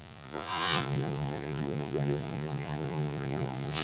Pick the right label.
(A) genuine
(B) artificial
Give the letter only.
B